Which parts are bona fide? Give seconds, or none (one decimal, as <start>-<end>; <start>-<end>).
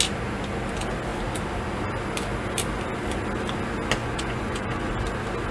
0.0-4.0; 4.9-5.5